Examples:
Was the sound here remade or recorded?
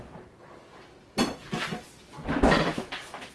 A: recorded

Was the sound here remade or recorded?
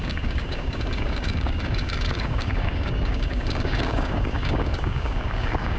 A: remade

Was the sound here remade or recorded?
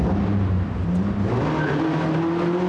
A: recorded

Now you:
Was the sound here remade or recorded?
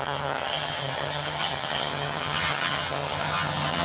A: remade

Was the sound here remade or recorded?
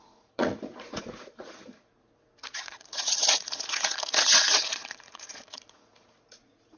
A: remade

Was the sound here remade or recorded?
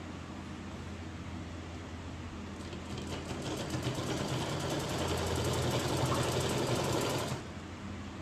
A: recorded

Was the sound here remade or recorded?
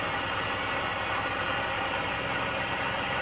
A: recorded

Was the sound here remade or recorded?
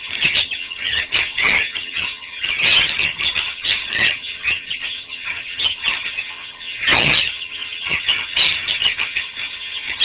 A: remade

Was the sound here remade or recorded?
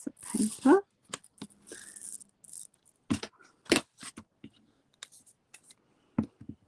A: recorded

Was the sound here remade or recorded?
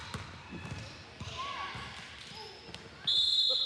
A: recorded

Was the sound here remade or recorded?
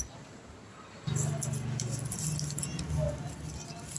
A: recorded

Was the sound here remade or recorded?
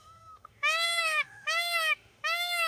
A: remade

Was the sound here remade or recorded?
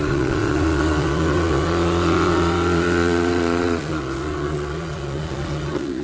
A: remade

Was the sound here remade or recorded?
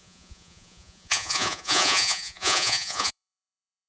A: remade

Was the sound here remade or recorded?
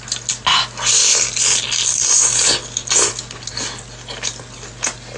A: recorded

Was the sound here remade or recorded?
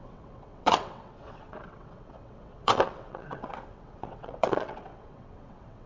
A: remade